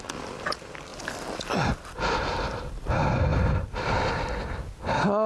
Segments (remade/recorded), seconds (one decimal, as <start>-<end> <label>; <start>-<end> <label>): 0.0-0.9 recorded; 0.9-2.3 remade; 2.3-3.3 recorded; 3.3-3.9 remade; 3.9-5.3 recorded